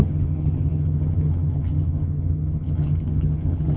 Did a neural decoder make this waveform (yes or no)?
yes